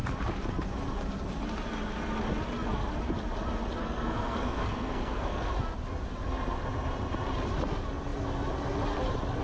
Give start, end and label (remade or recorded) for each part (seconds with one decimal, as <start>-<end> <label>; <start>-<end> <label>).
0.0-3.8 recorded; 3.8-5.5 remade; 5.5-9.4 recorded